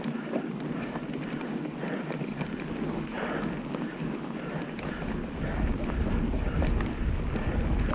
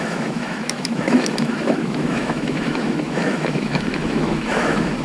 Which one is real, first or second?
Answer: first